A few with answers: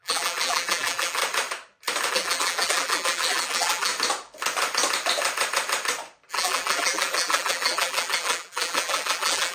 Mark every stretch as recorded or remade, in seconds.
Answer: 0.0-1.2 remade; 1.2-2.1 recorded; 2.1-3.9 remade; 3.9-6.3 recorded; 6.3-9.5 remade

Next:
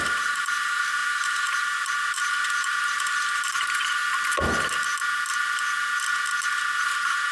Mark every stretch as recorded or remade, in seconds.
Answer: 0.0-4.0 remade; 4.0-6.8 recorded; 6.8-7.3 remade

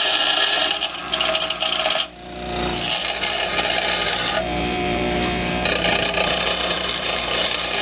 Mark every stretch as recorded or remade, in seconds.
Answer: 0.0-1.0 remade; 1.0-1.9 recorded; 1.9-7.8 remade

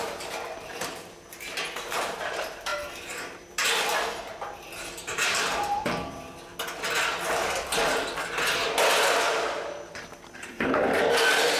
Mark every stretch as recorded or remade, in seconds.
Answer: 0.0-6.5 remade; 6.5-9.1 recorded; 9.1-11.6 remade

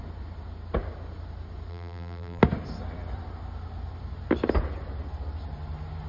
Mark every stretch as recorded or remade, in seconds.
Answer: 0.0-1.7 recorded; 1.7-2.4 remade; 2.4-6.1 recorded

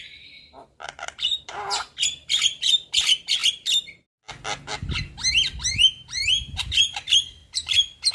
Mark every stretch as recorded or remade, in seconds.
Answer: 0.0-3.4 remade; 3.4-5.7 recorded; 5.7-7.4 remade; 7.4-8.1 recorded

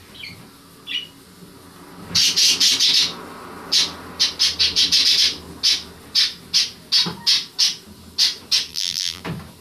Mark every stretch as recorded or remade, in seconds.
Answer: 0.0-8.7 recorded; 8.7-9.2 remade; 9.2-9.6 recorded

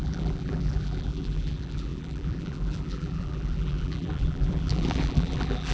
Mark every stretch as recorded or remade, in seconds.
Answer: 0.0-5.7 remade